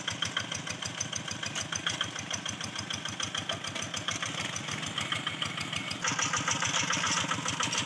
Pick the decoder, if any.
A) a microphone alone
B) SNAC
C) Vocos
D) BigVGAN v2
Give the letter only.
A